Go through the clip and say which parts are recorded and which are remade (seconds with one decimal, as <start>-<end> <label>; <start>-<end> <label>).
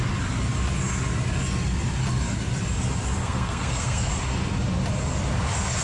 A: 0.0-3.2 recorded; 3.2-4.1 remade; 4.1-5.8 recorded